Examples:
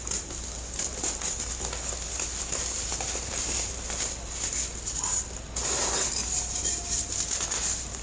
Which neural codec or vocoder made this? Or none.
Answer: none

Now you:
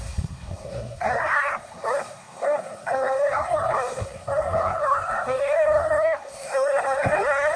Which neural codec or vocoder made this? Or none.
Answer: codec, SNAC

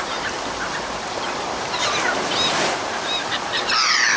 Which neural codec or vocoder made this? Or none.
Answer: vocoder, BigVGAN v2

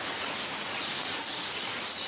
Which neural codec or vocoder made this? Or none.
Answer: vocoder, Vocos